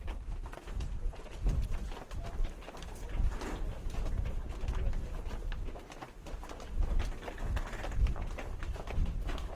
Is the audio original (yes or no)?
yes